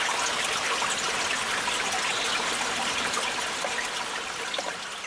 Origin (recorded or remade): recorded